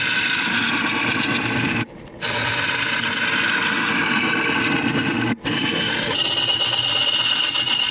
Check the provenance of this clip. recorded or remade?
recorded